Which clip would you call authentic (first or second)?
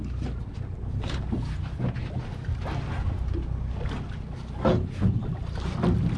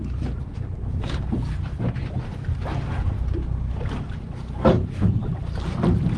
first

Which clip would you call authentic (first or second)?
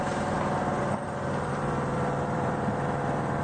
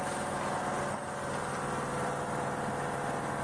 second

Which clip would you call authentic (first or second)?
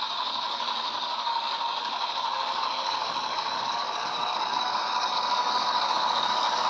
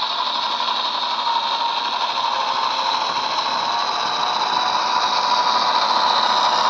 second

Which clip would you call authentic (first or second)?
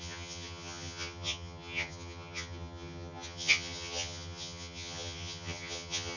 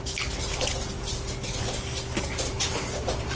second